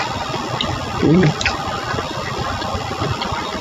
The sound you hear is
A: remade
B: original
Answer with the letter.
B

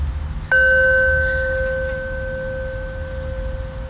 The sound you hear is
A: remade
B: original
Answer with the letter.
B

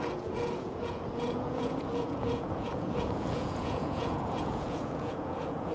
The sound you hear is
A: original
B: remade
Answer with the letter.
B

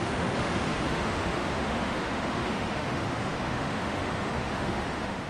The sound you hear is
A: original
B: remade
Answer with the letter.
B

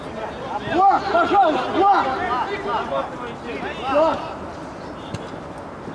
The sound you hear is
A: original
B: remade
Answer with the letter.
A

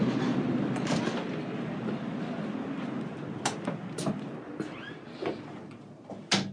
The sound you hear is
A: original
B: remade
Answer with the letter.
A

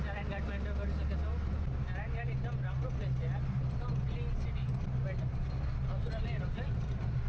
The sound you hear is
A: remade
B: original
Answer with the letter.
B